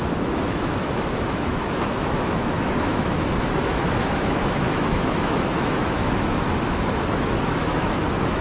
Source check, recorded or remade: remade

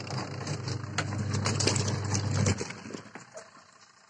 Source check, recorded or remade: recorded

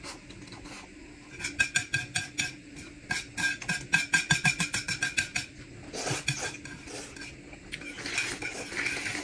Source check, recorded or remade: recorded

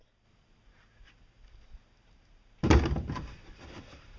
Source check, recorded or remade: recorded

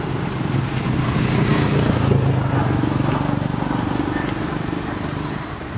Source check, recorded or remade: recorded